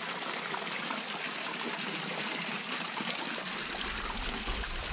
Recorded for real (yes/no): yes